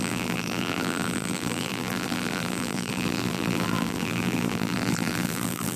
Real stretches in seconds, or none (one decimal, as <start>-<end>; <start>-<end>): none